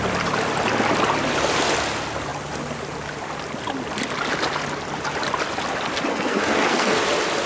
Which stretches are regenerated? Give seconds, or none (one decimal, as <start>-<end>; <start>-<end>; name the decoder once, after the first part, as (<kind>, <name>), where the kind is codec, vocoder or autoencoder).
6.1-7.0 (codec, SNAC)